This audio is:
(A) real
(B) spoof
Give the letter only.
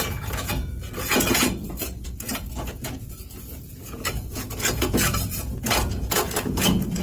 B